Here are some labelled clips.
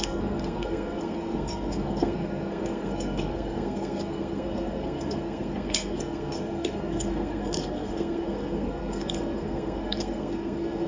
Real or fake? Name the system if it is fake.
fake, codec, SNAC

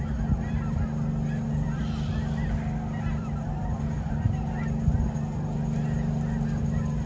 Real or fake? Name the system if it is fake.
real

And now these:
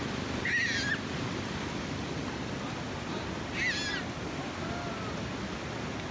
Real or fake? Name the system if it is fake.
real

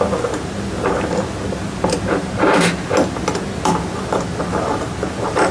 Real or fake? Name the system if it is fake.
real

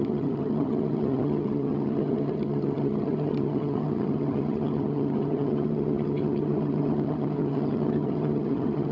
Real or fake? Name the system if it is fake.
fake, vocoder, HiFi-GAN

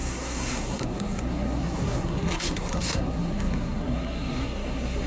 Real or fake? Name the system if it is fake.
fake, codec, SNAC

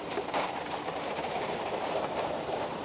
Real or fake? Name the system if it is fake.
fake, vocoder, BigVGAN v2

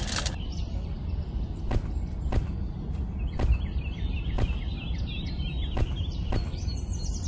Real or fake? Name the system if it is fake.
real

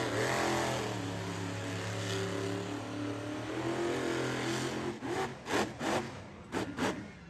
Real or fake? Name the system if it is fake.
real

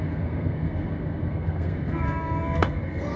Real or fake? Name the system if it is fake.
fake, codec, SNAC